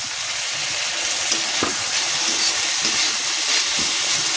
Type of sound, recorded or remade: recorded